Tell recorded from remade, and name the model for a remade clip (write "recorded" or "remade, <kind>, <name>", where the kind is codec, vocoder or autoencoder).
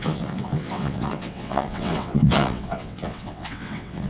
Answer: remade, vocoder, WaveNeXt